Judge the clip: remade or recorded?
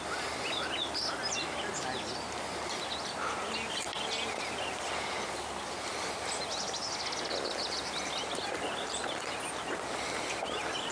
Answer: recorded